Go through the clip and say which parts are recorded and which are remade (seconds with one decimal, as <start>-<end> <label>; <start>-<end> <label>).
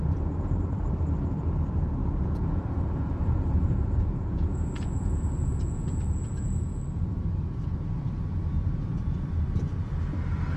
0.0-2.0 recorded; 2.0-6.8 remade; 6.8-10.6 recorded